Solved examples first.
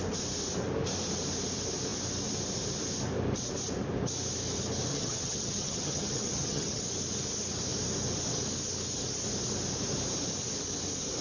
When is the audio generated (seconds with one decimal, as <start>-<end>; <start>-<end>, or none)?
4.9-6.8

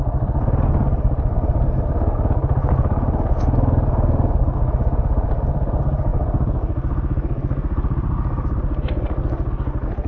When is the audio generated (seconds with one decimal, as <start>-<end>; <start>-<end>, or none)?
none

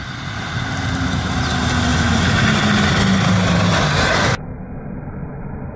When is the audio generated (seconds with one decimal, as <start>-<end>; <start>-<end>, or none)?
none

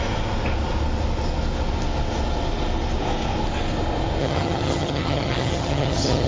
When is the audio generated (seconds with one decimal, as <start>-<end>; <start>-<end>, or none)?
4.2-6.3

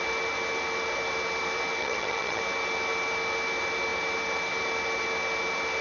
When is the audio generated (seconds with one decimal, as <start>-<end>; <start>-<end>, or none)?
1.8-2.4